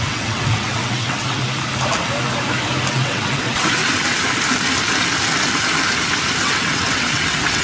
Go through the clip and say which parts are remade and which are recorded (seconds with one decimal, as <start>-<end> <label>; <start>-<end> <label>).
0.0-1.4 remade; 1.4-2.9 recorded; 2.9-3.8 remade; 3.8-6.4 recorded; 6.4-7.6 remade

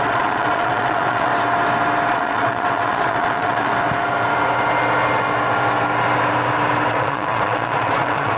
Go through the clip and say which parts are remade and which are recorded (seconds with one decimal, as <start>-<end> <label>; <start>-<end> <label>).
0.0-1.3 remade; 1.3-2.1 recorded; 2.1-3.7 remade; 3.7-6.9 recorded; 6.9-8.4 remade

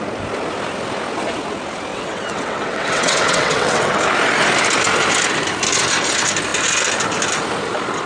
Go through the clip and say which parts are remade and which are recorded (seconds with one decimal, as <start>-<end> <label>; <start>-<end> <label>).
0.0-1.9 recorded; 1.9-4.0 remade; 4.0-8.1 recorded

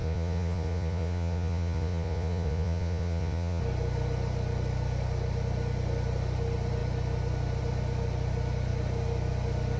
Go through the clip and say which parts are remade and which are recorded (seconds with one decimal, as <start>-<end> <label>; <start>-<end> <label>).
0.0-3.6 remade; 3.6-9.8 recorded

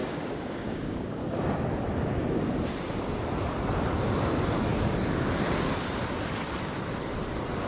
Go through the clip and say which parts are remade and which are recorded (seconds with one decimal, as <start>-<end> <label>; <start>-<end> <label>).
0.0-1.2 remade; 1.2-7.7 recorded